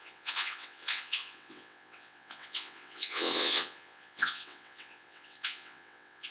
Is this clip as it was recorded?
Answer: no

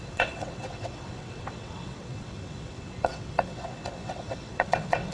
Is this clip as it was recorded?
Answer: no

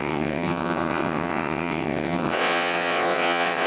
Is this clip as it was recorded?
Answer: no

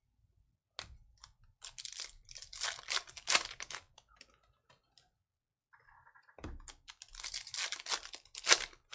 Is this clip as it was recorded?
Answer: yes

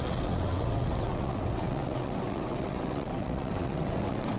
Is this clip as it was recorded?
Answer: no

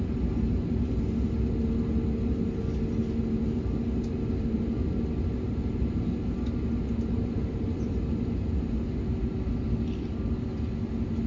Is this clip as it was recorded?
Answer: yes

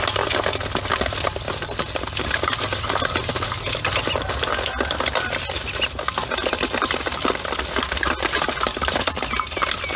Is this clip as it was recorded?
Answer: yes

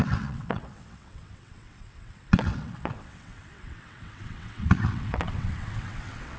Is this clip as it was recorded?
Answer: no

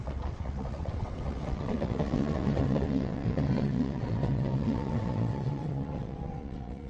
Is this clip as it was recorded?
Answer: no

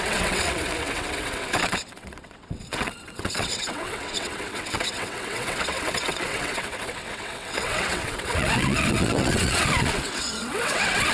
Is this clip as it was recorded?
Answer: no